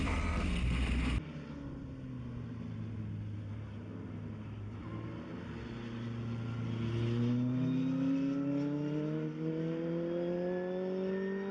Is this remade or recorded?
recorded